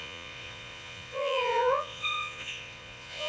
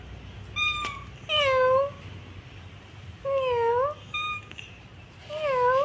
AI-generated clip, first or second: first